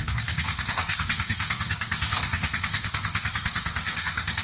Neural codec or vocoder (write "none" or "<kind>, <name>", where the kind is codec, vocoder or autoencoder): codec, DAC